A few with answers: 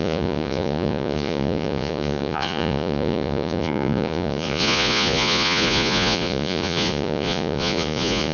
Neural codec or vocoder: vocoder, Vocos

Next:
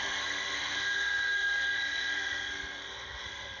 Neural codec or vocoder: codec, SNAC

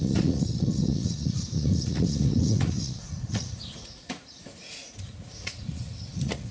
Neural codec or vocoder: vocoder, Vocos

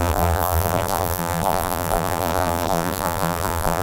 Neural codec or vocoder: vocoder, BigVGAN v2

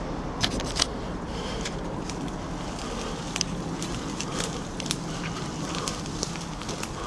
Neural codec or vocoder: vocoder, BigVGAN v2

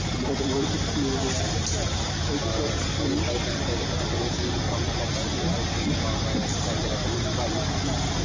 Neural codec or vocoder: none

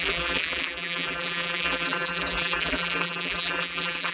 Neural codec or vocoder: vocoder, BigVGAN v2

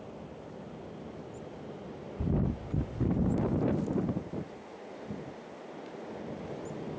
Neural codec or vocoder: none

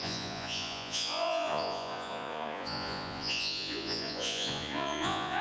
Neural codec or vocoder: vocoder, Vocos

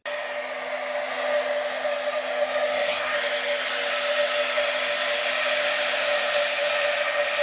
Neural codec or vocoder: none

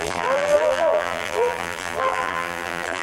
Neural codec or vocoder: vocoder, BigVGAN v2